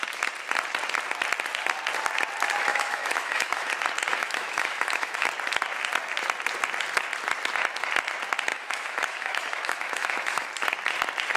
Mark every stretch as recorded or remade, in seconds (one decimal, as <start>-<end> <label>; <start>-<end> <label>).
0.0-2.7 recorded; 2.7-3.7 remade; 3.7-4.2 recorded; 4.2-5.3 remade; 5.3-8.5 recorded; 8.5-10.5 remade; 10.5-11.4 recorded